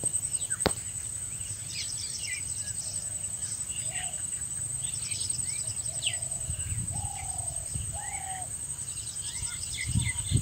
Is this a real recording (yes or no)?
no